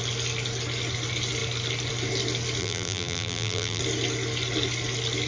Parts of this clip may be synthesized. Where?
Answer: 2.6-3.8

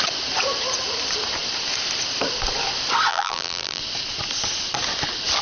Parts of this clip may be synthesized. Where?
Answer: 3.1-3.8

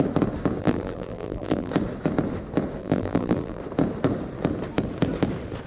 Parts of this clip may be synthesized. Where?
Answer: 0.6-1.7; 2.8-3.6